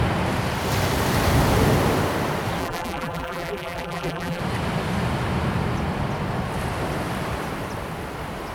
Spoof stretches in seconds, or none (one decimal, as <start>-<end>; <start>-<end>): 2.6-4.4